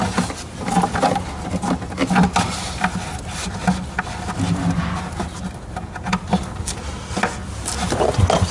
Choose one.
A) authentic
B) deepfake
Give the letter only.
A